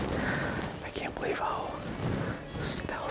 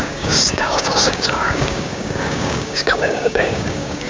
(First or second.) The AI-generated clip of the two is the second